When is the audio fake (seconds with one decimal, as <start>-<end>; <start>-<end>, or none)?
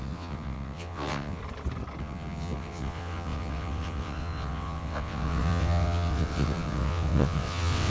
0.0-1.4; 2.0-7.9